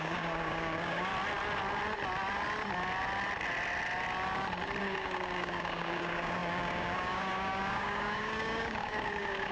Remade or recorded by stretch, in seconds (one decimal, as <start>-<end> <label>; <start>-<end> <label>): 0.0-1.1 remade; 1.1-4.8 recorded; 4.8-9.5 remade